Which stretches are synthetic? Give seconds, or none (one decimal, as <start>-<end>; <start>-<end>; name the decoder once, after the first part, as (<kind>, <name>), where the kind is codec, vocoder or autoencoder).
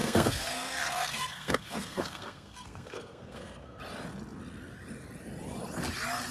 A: 0.0-3.8 (codec, SNAC)